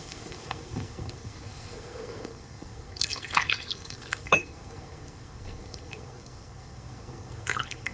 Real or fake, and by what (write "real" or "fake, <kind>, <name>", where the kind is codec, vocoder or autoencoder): fake, codec, SNAC